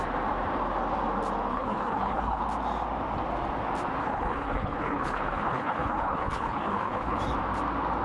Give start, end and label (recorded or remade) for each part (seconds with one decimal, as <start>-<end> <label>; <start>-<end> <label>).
0.0-1.5 recorded; 1.5-2.4 remade; 2.4-4.0 recorded; 4.0-7.2 remade; 7.2-8.0 recorded